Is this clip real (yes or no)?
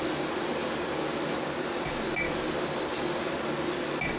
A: yes